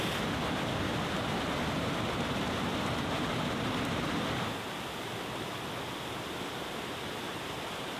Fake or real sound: real